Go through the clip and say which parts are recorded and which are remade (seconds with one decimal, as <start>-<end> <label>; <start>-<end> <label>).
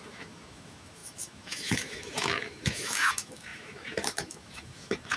0.0-5.2 remade